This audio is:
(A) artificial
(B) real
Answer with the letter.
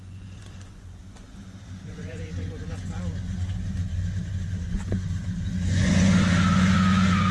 A